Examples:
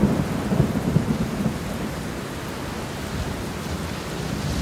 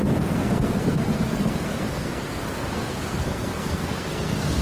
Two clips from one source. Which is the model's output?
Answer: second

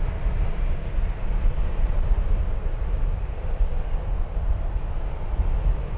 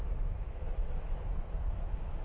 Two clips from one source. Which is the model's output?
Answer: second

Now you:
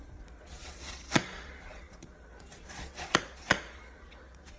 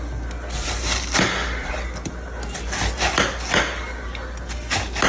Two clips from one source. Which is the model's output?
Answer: first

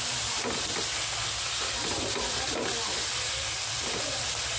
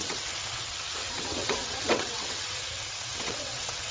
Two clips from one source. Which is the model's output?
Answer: second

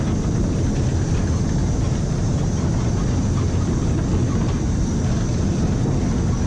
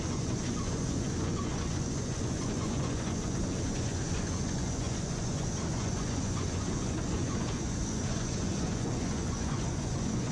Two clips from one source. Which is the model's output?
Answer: second